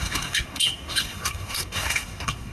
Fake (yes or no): yes